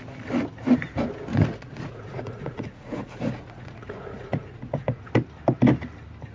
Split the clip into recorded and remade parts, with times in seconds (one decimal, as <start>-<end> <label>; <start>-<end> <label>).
0.0-1.3 recorded; 1.3-5.1 remade; 5.1-6.3 recorded